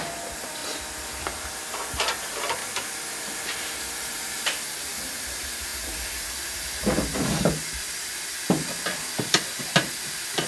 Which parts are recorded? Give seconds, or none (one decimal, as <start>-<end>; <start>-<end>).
0.6-1.2; 2.6-4.1; 5.7-6.3